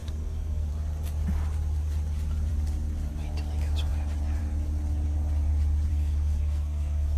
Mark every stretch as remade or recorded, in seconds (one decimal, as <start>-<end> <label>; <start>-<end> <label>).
0.0-0.7 remade; 0.7-5.9 recorded; 5.9-7.2 remade